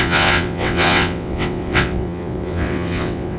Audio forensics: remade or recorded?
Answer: remade